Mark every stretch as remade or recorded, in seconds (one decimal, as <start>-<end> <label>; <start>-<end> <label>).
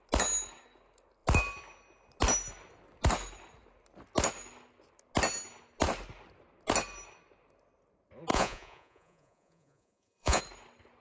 0.0-8.3 recorded; 8.3-10.4 remade; 10.4-11.0 recorded